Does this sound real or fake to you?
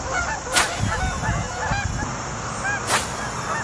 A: real